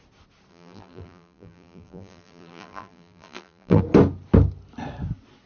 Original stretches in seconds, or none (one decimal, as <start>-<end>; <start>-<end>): 0.0-0.5; 3.8-5.5